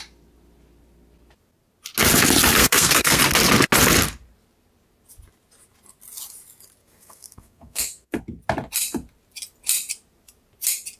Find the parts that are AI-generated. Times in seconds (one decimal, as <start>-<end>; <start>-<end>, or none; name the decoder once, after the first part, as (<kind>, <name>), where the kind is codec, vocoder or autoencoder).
2.6-3.2 (codec, SNAC); 6.8-8.2